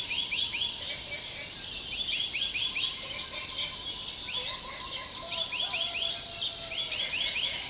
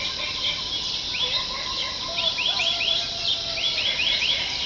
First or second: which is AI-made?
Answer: second